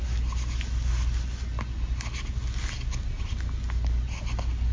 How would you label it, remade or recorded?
recorded